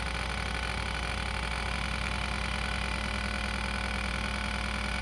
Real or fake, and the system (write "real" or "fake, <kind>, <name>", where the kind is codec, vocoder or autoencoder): real